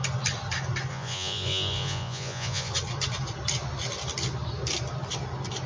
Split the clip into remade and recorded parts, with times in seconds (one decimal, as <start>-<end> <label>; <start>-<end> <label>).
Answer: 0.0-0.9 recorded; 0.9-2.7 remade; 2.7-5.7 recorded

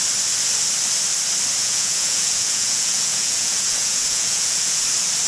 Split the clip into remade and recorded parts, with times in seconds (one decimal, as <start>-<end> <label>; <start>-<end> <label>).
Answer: 0.0-1.6 recorded; 1.6-4.8 remade; 4.8-5.3 recorded

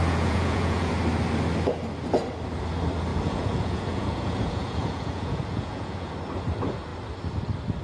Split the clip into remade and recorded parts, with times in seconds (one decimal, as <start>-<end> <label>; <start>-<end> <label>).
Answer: 0.0-0.9 remade; 0.9-3.1 recorded; 3.1-6.1 remade; 6.1-7.8 recorded

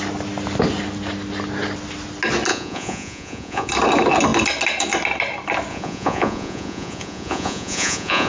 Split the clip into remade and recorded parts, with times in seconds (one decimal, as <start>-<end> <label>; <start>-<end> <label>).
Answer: 0.0-2.5 recorded; 2.5-3.7 remade; 3.7-5.7 recorded; 5.7-8.3 remade

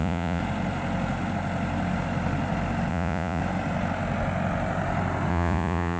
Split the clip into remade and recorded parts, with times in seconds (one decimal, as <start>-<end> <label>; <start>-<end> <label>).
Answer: 0.0-0.4 remade; 0.4-2.9 recorded; 2.9-3.4 remade; 3.4-5.3 recorded; 5.3-6.0 remade

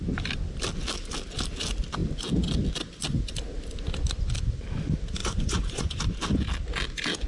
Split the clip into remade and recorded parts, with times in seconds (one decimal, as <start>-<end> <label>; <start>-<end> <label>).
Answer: 0.0-5.2 recorded; 5.2-6.0 remade; 6.0-7.3 recorded

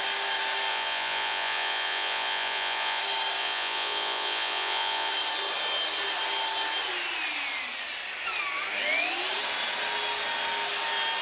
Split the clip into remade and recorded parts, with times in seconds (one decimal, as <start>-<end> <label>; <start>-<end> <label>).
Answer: 0.0-0.7 recorded; 0.7-3.0 remade; 3.0-3.4 recorded; 3.4-5.1 remade; 5.1-11.2 recorded

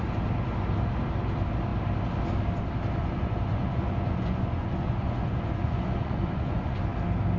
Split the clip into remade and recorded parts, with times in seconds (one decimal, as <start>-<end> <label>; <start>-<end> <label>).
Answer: 0.0-3.0 recorded; 3.0-6.8 remade; 6.8-7.4 recorded